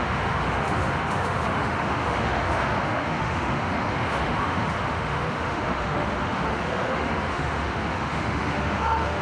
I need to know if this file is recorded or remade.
remade